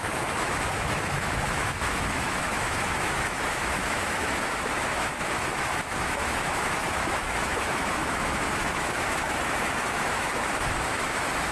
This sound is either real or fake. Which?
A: fake